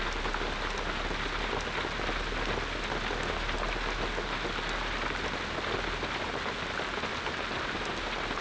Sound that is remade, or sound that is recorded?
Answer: recorded